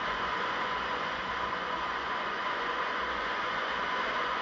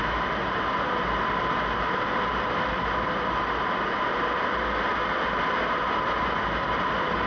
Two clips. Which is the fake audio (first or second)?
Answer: first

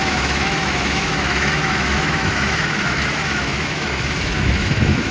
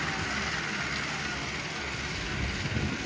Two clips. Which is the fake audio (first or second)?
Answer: first